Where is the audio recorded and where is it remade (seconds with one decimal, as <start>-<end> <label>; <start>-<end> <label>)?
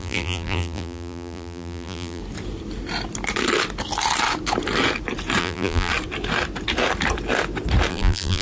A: 0.0-2.2 remade; 2.2-5.4 recorded; 5.4-5.9 remade; 5.9-7.9 recorded; 7.9-8.4 remade